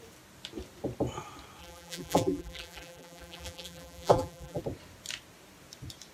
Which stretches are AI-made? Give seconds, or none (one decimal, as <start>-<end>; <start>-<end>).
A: 1.6-4.6